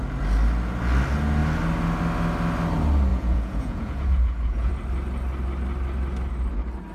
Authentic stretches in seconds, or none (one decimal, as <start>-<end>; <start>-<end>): 0.0-3.1; 4.7-6.9